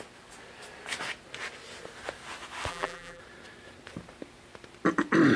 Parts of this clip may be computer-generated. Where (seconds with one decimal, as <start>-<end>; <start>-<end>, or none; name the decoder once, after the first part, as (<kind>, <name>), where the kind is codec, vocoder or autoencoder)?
2.7-3.2 (vocoder, BigVGAN v2)